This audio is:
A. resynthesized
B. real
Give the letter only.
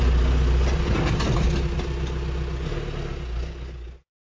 B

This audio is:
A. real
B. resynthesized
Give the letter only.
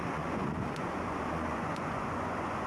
B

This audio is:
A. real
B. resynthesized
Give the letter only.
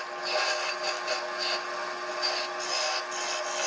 A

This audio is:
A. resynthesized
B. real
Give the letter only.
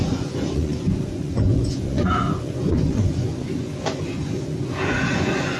A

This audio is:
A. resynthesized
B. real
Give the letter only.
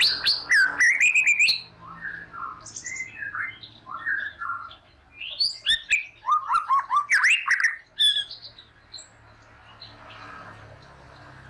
B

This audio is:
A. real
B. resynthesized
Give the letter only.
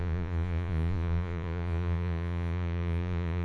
B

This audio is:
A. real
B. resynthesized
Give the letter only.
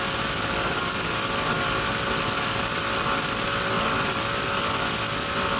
A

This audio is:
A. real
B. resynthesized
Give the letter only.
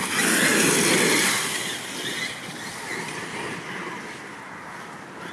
A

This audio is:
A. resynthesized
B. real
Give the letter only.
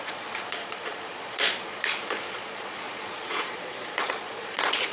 A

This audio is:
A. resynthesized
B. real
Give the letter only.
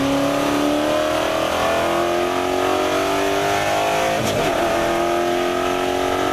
B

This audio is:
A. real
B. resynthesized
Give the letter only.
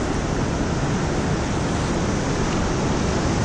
A